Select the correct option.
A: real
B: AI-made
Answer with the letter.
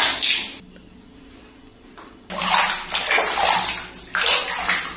A